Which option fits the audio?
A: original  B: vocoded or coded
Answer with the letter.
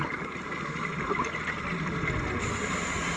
A